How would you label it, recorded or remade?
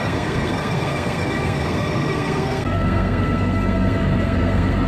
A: remade